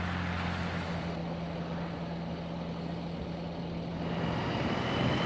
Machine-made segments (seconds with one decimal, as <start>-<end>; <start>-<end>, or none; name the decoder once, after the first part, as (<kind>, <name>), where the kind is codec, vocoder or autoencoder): none